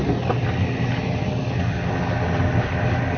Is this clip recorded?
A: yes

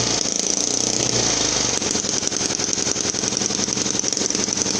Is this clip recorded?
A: yes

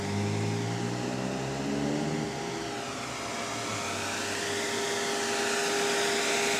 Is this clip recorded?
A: yes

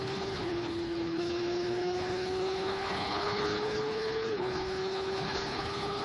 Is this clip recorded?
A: no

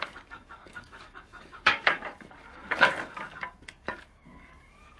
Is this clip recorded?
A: no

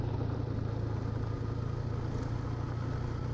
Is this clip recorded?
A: yes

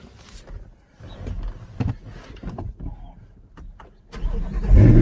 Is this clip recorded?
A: yes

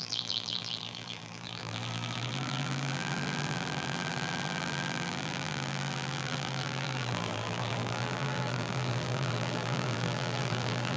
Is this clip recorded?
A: no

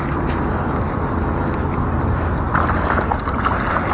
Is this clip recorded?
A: yes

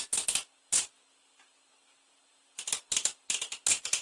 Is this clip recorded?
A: yes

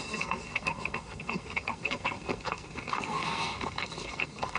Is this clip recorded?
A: no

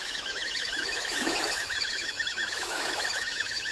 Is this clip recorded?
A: no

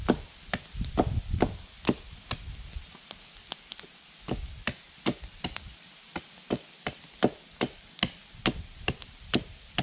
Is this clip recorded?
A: yes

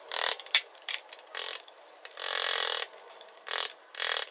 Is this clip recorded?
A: no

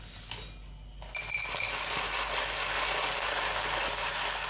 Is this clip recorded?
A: yes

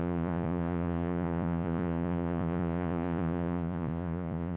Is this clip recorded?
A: no